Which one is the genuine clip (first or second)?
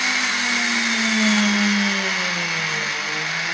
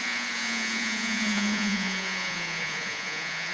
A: first